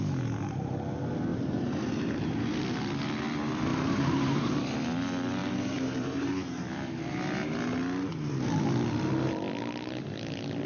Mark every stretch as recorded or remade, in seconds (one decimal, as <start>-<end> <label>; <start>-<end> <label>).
0.0-1.3 recorded; 1.3-2.6 remade; 2.6-3.7 recorded; 3.7-4.5 remade; 4.5-5.4 recorded; 5.4-6.3 remade; 6.3-10.7 recorded

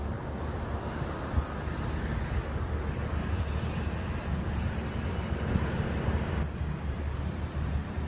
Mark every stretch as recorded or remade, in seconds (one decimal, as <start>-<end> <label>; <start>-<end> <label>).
0.0-8.1 recorded

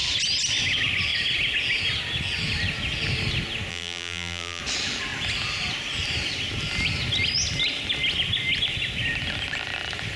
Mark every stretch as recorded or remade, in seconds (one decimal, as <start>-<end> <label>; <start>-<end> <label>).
0.0-3.7 recorded; 3.7-4.6 remade; 4.6-10.2 recorded

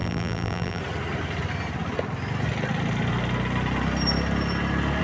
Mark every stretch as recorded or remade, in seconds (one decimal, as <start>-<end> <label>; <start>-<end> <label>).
0.0-0.8 remade; 0.8-5.0 recorded

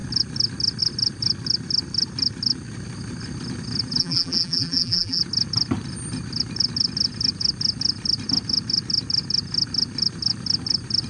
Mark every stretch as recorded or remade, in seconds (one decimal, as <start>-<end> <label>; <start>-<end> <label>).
0.0-4.0 recorded; 4.0-5.2 remade; 5.2-11.1 recorded